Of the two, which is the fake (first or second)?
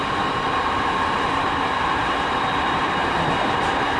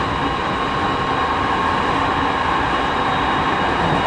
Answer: first